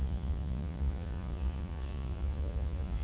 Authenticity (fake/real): fake